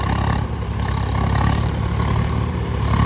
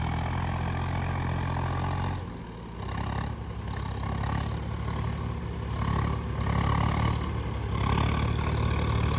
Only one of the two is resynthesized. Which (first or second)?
first